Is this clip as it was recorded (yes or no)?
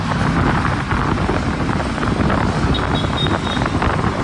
yes